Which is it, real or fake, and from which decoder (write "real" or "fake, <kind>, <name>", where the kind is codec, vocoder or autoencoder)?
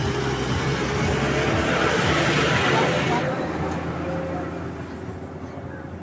real